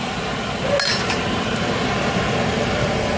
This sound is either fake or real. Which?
real